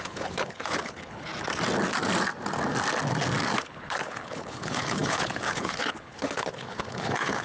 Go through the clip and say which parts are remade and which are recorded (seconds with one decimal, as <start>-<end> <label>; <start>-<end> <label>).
0.0-1.3 remade; 1.3-3.6 recorded; 3.6-7.4 remade